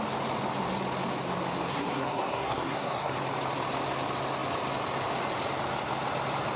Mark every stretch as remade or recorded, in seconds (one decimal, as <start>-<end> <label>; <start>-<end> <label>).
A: 0.0-1.7 recorded; 1.7-3.2 remade; 3.2-6.6 recorded